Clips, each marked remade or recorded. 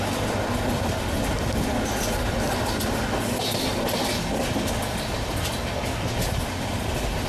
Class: recorded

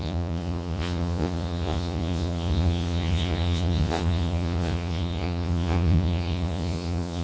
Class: remade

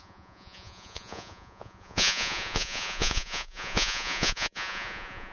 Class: remade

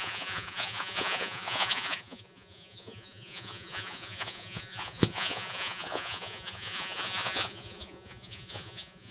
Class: remade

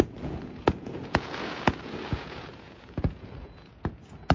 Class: remade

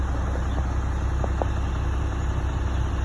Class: recorded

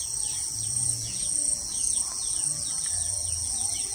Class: remade